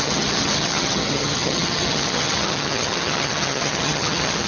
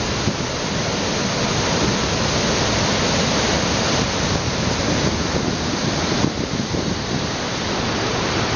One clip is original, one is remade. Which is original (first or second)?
second